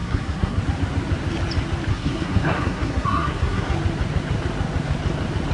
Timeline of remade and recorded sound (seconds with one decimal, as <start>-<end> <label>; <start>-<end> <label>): 0.0-0.6 remade; 0.6-1.9 recorded; 1.9-3.7 remade; 3.7-5.5 recorded